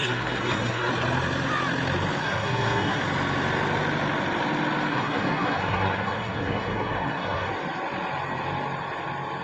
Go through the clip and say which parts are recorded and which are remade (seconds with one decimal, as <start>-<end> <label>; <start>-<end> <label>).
0.0-0.9 remade; 0.9-2.2 recorded; 2.2-3.0 remade; 3.0-4.9 recorded; 4.9-7.5 remade; 7.5-9.4 recorded